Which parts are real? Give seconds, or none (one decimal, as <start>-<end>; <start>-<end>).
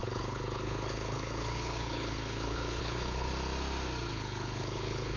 3.3-4.1